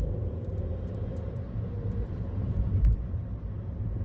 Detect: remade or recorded remade